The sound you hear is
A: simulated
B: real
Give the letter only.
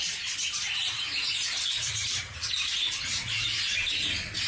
A